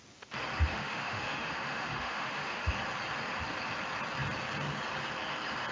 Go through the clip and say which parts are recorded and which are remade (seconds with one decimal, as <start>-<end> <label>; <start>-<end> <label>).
0.0-0.7 recorded; 0.7-2.7 remade; 2.7-5.7 recorded